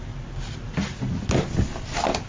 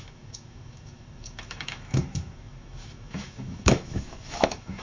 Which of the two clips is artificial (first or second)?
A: second